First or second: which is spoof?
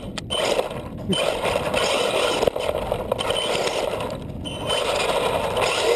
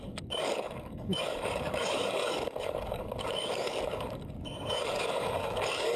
second